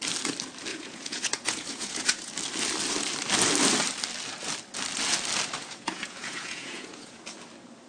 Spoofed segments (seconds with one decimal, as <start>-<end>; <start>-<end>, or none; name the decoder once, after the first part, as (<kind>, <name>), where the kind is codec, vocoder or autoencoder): 0.7-2.3 (vocoder, Vocos); 5.6-7.2